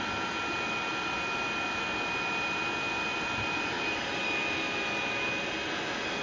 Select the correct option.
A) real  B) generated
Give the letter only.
A